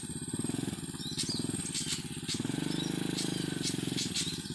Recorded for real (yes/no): yes